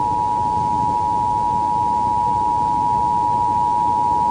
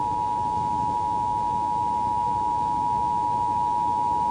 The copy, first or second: second